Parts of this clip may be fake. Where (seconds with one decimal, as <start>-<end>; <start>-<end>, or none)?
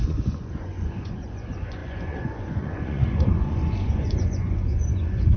0.0-5.4